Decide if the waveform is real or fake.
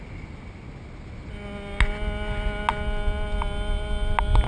real